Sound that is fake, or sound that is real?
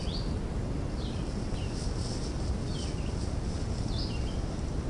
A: real